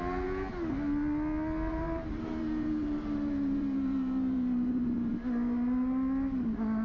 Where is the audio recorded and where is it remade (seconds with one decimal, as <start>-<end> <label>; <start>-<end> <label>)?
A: 0.0-1.7 recorded; 1.7-5.1 remade; 5.1-6.8 recorded